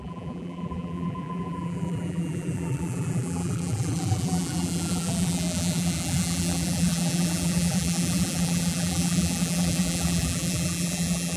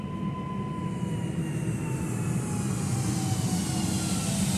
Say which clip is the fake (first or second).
first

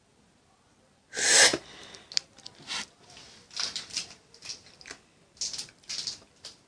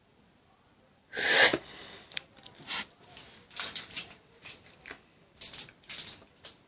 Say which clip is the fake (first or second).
second